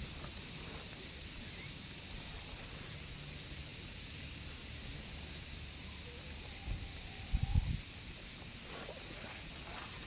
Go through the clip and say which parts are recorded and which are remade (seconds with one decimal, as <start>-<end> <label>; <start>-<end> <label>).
0.0-10.1 recorded